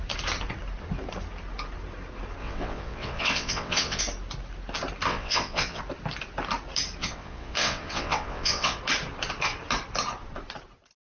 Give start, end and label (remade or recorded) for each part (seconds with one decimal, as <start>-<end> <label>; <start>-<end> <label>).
0.0-2.4 recorded; 2.4-4.0 remade; 4.0-5.1 recorded; 5.1-5.8 remade; 5.8-7.0 recorded; 7.0-8.8 remade; 8.8-11.2 recorded